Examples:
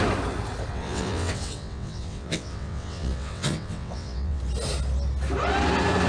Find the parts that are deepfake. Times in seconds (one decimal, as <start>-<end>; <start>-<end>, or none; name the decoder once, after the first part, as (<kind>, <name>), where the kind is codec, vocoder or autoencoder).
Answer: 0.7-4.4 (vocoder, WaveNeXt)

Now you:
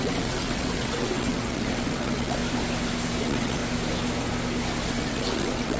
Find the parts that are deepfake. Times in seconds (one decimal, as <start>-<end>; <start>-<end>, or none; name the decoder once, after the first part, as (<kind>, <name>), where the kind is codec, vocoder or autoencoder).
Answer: 0.0-2.4 (vocoder, WaveNeXt); 3.2-3.6; 4.9-5.8

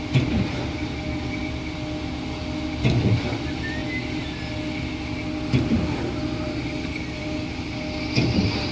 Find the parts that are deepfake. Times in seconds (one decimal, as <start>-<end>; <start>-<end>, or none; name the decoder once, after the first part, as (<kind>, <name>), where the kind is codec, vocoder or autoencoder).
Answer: none

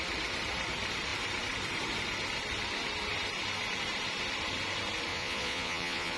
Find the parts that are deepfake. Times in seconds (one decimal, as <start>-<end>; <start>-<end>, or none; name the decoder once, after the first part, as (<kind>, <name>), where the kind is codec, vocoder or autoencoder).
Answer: 5.1-6.2 (vocoder, Vocos)

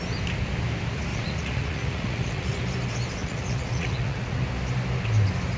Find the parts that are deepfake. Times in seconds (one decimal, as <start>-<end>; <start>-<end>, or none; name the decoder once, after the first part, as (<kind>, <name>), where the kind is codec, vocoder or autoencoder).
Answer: 1.1-2.6 (vocoder, Vocos); 3.2-4.4

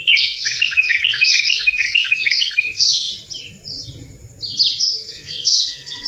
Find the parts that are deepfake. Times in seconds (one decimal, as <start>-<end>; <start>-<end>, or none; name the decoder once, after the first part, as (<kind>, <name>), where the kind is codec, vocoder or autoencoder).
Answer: 0.0-3.1 (codec, SNAC); 4.8-6.1